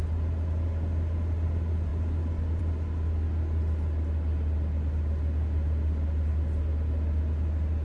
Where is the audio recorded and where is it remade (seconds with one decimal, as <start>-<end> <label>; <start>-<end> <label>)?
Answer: 0.0-7.8 recorded